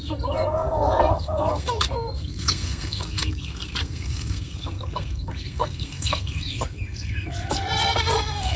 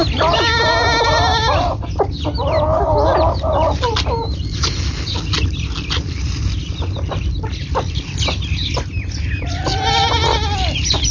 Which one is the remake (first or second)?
first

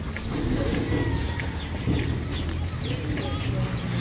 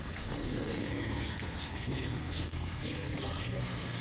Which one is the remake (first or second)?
second